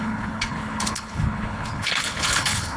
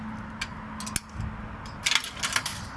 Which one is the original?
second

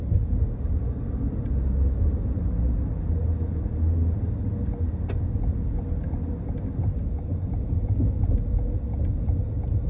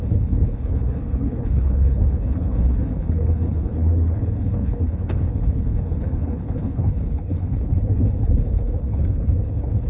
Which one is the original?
first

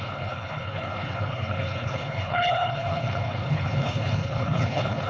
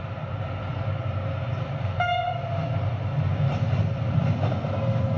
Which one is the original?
second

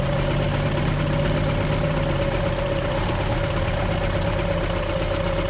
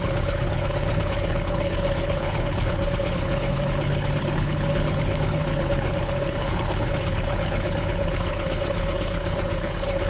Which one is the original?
first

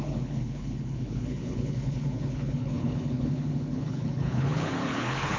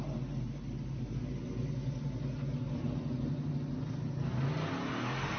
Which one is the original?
second